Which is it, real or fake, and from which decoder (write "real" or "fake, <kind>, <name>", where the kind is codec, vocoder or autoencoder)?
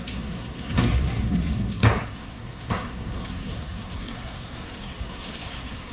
fake, codec, SNAC